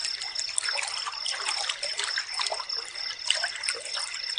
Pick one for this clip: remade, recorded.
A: recorded